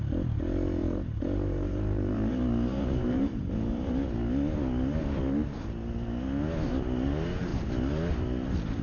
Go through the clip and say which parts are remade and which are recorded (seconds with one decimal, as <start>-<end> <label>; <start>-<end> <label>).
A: 0.0-0.8 recorded; 0.8-3.9 remade; 3.9-8.8 recorded

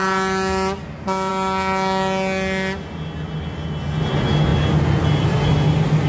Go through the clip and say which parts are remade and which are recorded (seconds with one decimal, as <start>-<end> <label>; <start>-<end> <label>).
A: 0.0-6.1 recorded

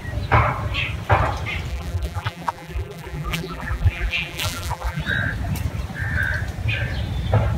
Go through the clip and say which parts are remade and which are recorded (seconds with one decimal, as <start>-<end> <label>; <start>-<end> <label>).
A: 0.0-1.7 recorded; 1.7-5.0 remade; 5.0-7.6 recorded

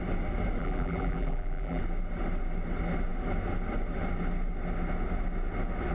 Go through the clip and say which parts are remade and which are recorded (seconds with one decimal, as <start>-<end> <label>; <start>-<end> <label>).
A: 0.0-0.6 recorded; 0.6-1.8 remade; 1.8-5.9 recorded

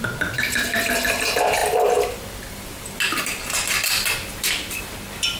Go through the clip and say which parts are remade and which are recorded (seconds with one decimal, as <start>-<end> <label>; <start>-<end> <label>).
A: 0.0-5.4 recorded